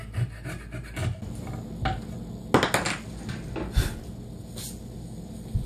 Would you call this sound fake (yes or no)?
no